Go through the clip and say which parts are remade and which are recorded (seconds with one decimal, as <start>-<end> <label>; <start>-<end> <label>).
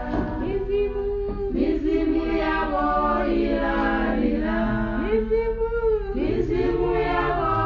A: 0.0-7.7 recorded